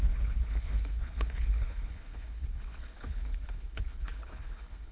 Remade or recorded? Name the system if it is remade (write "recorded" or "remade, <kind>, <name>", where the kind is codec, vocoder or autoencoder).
remade, codec, HILCodec